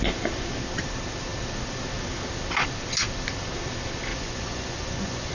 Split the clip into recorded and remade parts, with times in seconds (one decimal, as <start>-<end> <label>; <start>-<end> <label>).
0.0-4.1 recorded; 4.1-5.3 remade